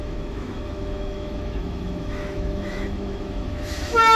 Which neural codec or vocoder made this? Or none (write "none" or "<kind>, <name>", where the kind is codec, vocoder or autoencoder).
autoencoder, DAC-VAE